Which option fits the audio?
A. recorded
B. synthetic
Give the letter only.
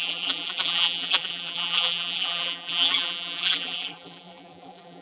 B